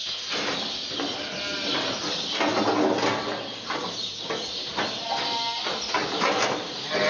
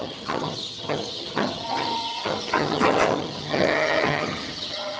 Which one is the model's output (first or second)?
second